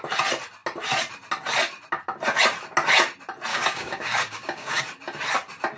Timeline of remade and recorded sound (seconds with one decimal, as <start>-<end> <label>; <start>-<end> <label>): 0.0-3.5 recorded; 3.5-4.8 remade; 4.8-5.8 recorded